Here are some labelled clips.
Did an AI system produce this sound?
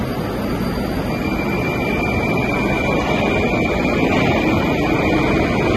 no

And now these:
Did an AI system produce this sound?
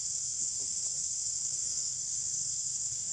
yes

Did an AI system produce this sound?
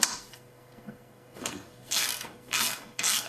yes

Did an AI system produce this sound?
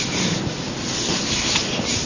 no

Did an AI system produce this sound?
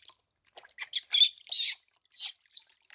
no